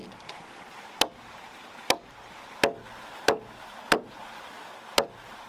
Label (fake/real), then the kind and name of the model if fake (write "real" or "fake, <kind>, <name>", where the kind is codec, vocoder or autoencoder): real